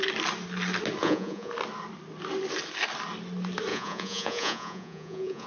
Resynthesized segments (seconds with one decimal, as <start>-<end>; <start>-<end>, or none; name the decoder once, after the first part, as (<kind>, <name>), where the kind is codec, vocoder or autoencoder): 1.0-1.5 (vocoder, Vocos); 3.7-5.5